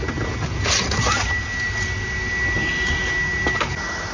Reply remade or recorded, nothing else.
recorded